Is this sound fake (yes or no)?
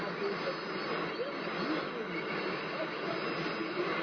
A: no